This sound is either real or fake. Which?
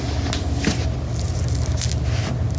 real